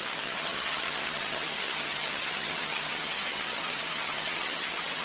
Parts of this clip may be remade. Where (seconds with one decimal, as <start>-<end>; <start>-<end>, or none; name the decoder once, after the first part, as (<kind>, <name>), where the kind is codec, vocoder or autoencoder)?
0.0-5.0 (vocoder, HiFi-GAN)

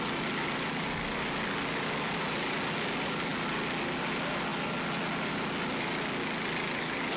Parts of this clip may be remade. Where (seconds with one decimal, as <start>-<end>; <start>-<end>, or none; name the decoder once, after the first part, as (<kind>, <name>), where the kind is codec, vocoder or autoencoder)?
none

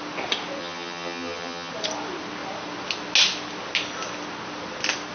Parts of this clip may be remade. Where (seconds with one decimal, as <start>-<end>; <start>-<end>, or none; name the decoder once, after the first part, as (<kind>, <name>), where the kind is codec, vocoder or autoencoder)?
0.6-1.7 (vocoder, HiFi-GAN)

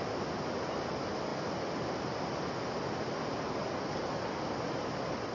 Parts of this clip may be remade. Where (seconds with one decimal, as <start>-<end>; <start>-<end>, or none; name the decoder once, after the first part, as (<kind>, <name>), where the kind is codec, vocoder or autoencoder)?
none

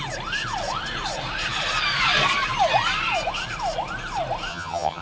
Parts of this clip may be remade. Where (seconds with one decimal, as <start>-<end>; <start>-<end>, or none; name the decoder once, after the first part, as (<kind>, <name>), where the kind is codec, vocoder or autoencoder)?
4.5-5.0 (vocoder, HiFi-GAN)

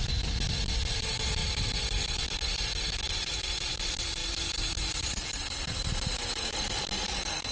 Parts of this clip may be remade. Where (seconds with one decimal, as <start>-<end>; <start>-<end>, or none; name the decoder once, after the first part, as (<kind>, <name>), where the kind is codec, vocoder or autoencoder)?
none

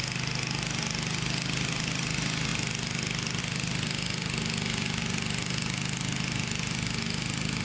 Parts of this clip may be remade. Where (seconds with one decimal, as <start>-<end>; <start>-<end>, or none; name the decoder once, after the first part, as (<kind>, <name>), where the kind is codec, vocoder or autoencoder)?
none